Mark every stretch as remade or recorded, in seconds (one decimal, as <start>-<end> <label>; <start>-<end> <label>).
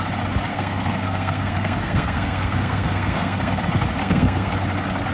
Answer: 0.0-0.5 recorded; 0.5-3.6 remade; 3.6-4.0 recorded; 4.0-4.5 remade; 4.5-5.1 recorded